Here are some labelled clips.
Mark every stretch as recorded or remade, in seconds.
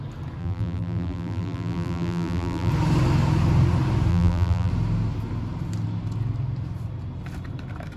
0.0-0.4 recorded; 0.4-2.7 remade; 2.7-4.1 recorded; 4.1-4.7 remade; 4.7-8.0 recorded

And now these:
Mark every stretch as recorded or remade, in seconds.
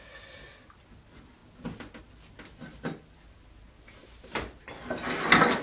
0.0-4.0 recorded; 4.0-4.6 remade; 4.6-5.6 recorded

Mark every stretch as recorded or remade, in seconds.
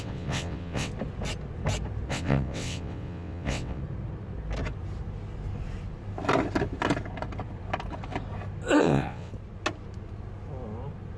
0.0-0.9 remade; 0.9-2.1 recorded; 2.1-3.8 remade; 3.8-8.8 recorded; 8.8-9.3 remade; 9.3-11.2 recorded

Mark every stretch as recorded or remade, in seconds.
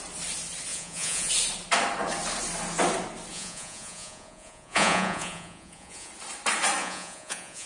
0.0-0.7 recorded; 0.7-1.3 remade; 1.3-3.3 recorded; 3.3-6.1 remade; 6.1-6.8 recorded; 6.8-7.7 remade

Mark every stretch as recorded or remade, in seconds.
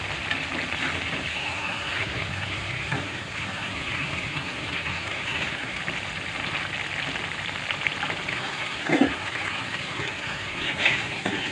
0.0-1.3 recorded; 1.3-5.8 remade; 5.8-8.3 recorded; 8.3-11.5 remade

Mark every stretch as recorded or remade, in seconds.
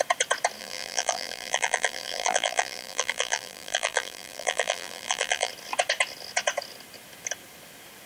0.0-0.6 recorded; 0.6-5.5 remade; 5.5-8.1 recorded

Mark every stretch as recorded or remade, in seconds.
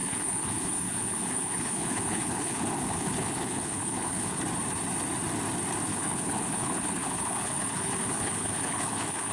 0.0-4.4 remade; 4.4-5.9 recorded; 5.9-9.3 remade